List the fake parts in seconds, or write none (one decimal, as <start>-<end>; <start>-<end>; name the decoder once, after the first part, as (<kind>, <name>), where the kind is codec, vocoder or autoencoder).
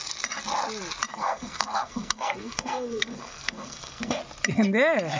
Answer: 1.1-4.2 (codec, SNAC)